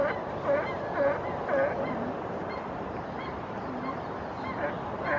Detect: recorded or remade remade